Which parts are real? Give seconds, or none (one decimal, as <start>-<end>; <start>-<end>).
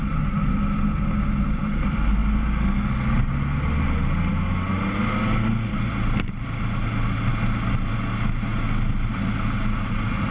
0.0-10.3